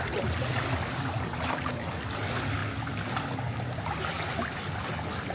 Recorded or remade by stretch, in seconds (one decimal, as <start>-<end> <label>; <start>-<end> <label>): 0.0-5.3 recorded